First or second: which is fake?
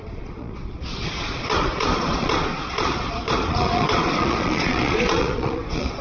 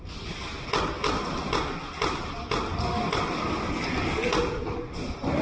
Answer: first